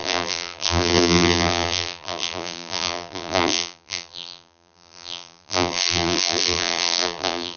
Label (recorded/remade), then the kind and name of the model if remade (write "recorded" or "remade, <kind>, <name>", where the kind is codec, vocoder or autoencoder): remade, vocoder, BigVGAN v2